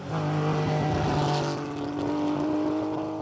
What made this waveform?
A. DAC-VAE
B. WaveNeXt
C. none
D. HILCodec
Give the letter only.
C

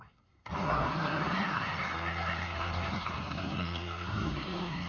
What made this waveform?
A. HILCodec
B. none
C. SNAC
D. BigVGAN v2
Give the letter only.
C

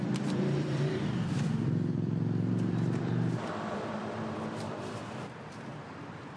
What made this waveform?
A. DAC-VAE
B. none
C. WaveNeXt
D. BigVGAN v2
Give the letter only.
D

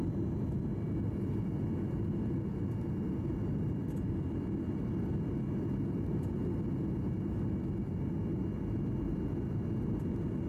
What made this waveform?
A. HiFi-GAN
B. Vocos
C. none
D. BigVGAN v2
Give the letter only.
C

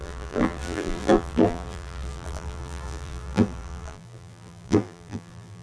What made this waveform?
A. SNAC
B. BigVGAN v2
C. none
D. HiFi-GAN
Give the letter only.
B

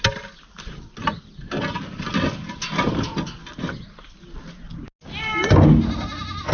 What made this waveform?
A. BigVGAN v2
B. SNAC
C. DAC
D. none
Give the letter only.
D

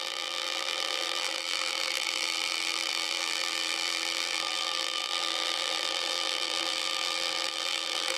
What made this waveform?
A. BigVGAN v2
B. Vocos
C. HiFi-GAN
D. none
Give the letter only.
A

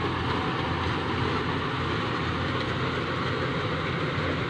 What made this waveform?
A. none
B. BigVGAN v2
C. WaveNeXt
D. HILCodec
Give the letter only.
A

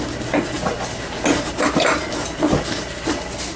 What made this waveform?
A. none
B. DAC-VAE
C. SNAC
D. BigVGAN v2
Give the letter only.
A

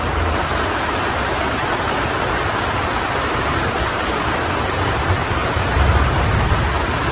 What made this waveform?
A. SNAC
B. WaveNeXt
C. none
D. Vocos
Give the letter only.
C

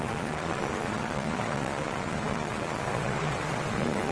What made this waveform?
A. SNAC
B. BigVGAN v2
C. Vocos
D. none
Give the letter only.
C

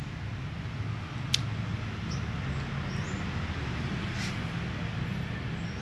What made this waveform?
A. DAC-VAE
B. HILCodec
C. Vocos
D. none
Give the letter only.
D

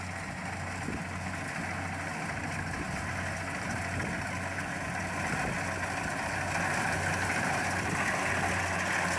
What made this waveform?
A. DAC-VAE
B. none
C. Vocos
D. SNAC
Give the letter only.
B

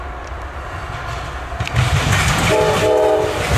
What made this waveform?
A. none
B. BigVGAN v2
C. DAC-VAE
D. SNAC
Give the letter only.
A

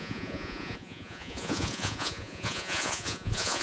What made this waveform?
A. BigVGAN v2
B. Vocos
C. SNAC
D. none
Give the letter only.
B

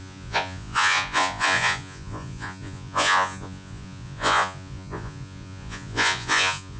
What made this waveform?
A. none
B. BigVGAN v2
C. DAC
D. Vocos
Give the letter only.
D